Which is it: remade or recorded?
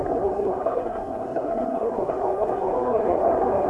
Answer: remade